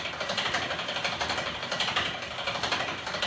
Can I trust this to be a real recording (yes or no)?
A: no